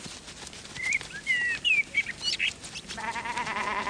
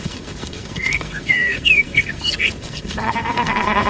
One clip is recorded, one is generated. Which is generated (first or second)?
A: second